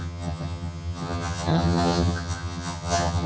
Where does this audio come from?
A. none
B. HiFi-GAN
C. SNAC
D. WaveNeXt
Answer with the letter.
B